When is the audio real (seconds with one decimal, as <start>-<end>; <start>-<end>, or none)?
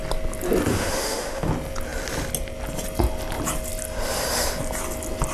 0.0-0.7; 1.5-5.3